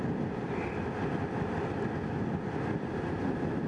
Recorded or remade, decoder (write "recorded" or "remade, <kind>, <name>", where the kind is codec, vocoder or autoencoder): recorded